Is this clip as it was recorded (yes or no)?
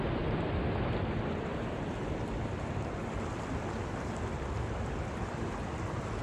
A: yes